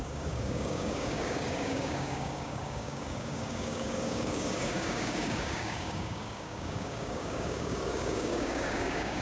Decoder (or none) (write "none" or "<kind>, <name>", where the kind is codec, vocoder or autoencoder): codec, DAC